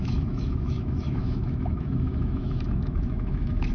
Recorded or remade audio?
remade